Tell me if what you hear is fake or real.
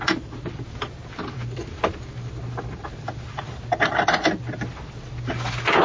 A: real